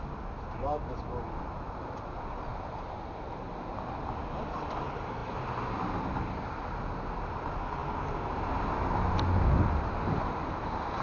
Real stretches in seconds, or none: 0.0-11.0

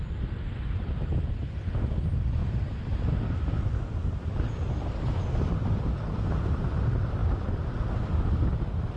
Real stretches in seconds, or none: 0.0-2.4; 4.9-9.0